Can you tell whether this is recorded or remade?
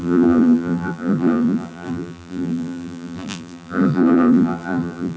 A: remade